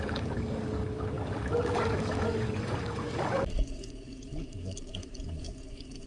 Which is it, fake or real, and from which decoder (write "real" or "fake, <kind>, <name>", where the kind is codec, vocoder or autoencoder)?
fake, codec, DAC